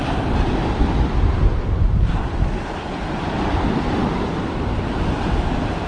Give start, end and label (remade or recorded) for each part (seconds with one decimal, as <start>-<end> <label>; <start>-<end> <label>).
0.0-5.9 recorded